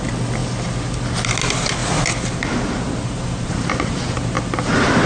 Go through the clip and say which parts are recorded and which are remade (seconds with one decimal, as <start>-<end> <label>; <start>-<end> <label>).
0.0-1.8 recorded; 1.8-4.4 remade; 4.4-5.1 recorded